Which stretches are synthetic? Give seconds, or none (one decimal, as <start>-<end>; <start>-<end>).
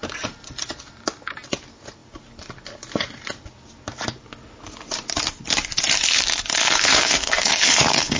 6.6-8.2